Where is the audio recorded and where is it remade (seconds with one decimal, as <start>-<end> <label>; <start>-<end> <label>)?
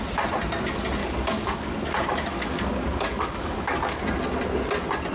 0.0-1.0 recorded; 1.0-4.0 remade; 4.0-5.1 recorded